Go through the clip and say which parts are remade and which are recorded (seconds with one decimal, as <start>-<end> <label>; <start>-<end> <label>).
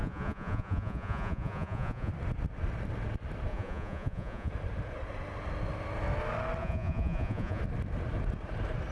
0.0-2.1 remade; 2.1-3.5 recorded; 3.5-4.5 remade; 4.5-6.6 recorded; 6.6-7.6 remade; 7.6-8.9 recorded